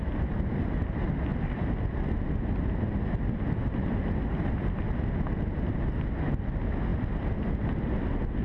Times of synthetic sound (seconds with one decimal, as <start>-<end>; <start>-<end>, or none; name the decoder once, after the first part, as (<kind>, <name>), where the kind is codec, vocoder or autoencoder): none